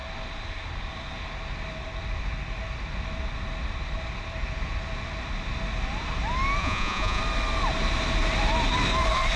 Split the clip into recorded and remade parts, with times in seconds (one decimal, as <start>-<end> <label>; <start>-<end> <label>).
0.0-6.6 recorded; 6.6-7.2 remade; 7.2-9.4 recorded